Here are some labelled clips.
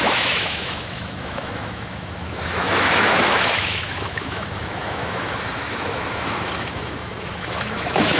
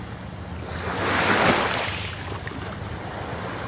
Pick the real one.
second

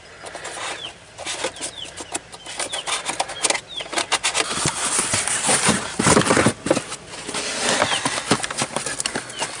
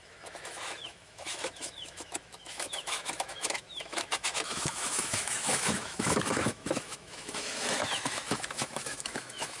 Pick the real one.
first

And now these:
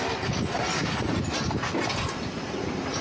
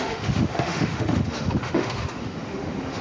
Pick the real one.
first